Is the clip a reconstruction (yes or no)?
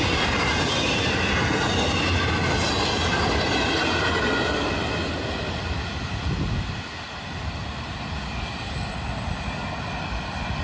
no